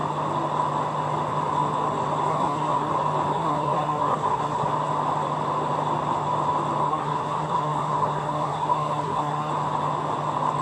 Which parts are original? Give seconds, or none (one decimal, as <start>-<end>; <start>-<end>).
0.0-2.3; 2.9-3.3; 4.7-6.8; 9.5-10.6